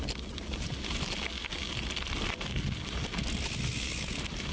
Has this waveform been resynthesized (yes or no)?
no